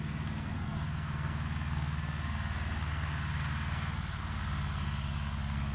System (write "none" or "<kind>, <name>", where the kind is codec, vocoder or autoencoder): codec, SNAC